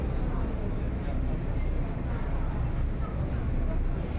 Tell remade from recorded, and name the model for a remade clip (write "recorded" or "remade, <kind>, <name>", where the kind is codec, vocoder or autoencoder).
recorded